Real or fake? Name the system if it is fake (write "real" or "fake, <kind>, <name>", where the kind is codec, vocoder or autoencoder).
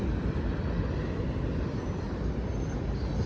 real